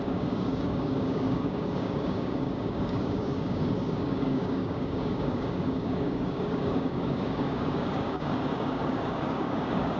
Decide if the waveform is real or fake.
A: fake